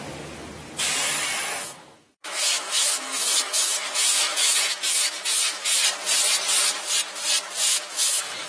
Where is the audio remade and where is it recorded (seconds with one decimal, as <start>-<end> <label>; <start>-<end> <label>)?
0.0-1.0 recorded; 1.0-5.8 remade; 5.8-7.7 recorded; 7.7-8.5 remade